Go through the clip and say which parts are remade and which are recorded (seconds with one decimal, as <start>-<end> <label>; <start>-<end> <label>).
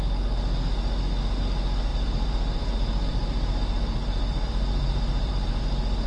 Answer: 0.0-1.9 recorded; 1.9-5.6 remade; 5.6-6.1 recorded